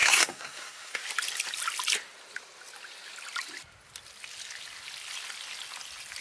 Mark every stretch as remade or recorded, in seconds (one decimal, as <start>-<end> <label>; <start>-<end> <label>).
0.0-1.0 remade; 1.0-6.2 recorded